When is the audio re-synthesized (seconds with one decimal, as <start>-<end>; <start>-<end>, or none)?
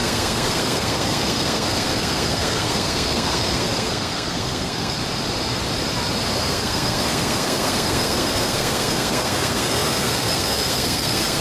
0.0-5.0; 6.4-11.4